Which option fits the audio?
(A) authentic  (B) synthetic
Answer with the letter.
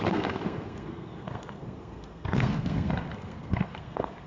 B